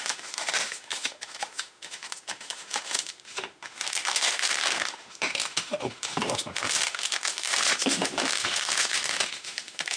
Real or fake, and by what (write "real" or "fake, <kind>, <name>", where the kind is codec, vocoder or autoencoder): fake, autoencoder, DAC-VAE